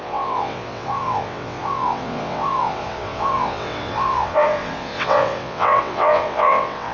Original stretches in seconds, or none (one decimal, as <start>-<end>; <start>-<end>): none